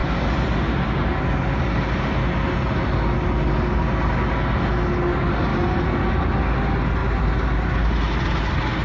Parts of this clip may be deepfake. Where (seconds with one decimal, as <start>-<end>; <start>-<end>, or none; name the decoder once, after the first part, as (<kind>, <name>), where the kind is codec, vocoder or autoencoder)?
none